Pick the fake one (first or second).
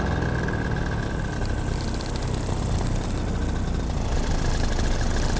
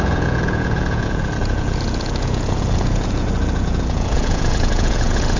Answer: second